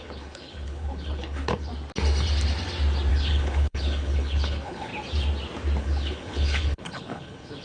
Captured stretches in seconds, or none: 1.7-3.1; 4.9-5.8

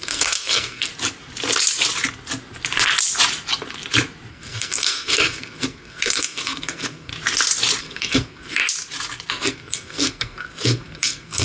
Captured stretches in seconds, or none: 0.9-4.3; 7.1-7.8; 8.6-9.3

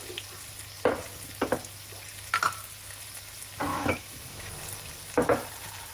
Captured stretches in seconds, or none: 0.0-3.7; 4.5-5.9

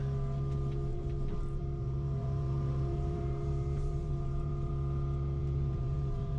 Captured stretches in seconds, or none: 0.0-0.9; 4.7-5.4

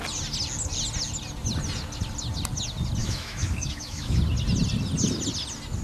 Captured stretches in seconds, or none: 0.0-3.0; 4.2-5.8

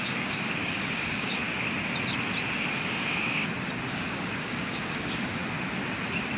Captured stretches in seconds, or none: 1.4-2.7; 3.4-3.9; 5.4-6.4

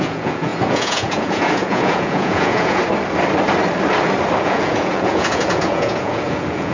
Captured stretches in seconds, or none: 2.8-4.4